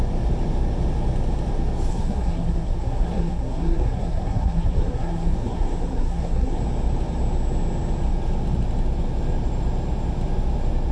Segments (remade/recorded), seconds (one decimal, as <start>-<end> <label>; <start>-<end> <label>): 0.0-1.9 recorded; 1.9-6.6 remade; 6.6-10.9 recorded